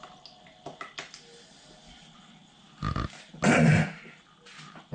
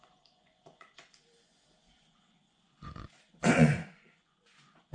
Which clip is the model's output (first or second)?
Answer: second